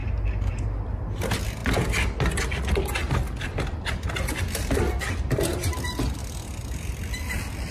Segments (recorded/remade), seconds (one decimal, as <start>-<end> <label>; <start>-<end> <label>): 0.0-7.7 recorded